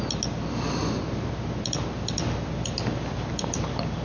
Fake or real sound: real